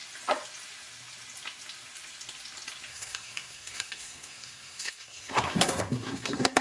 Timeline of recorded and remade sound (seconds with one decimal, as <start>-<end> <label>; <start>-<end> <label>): 0.0-2.9 recorded; 2.9-6.6 remade